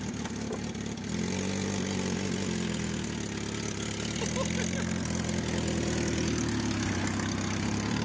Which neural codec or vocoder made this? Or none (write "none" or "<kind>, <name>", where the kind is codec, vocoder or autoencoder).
none